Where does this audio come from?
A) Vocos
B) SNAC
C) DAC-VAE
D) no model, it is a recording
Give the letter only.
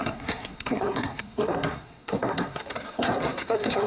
B